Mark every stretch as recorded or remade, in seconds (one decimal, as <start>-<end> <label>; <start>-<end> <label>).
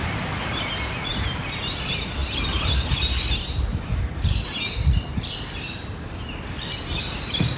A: 0.0-7.6 recorded